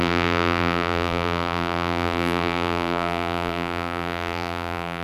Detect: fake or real fake